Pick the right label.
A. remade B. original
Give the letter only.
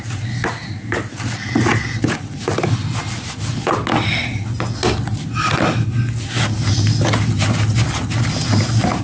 B